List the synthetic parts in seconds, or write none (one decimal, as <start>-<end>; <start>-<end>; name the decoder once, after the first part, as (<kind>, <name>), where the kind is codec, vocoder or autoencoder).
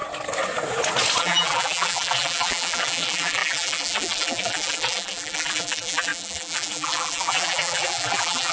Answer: 1.2-8.5 (vocoder, BigVGAN v2)